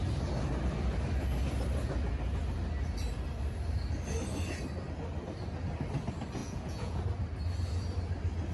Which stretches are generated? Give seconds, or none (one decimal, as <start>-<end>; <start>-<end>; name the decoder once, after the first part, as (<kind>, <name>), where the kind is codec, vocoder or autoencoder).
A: 6.4-7.0 (vocoder, Vocos)